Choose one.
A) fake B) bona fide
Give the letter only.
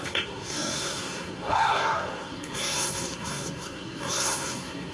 A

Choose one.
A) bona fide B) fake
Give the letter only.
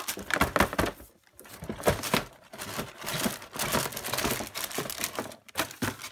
A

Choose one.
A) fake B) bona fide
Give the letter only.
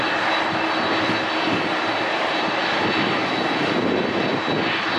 B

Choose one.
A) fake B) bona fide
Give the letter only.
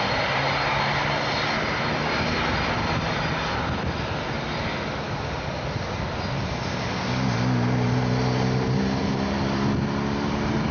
B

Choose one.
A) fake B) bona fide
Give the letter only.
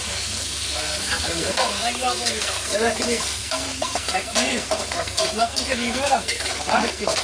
A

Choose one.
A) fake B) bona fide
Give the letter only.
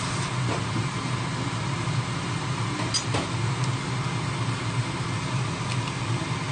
B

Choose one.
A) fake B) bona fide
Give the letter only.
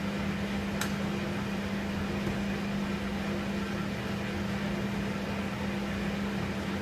B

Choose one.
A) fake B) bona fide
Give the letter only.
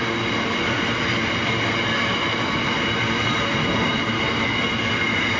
A